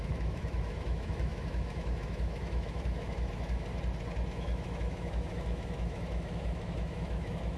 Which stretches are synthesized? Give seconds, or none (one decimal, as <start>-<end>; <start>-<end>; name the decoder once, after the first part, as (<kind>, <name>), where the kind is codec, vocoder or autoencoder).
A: 0.0-3.7 (autoencoder, DAC-VAE); 4.3-7.6